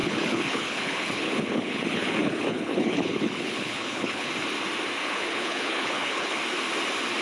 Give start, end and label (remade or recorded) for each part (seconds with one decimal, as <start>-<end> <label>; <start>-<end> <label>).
0.0-4.3 remade; 4.3-5.0 recorded; 5.0-6.4 remade; 6.4-7.2 recorded